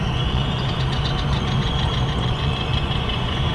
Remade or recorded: remade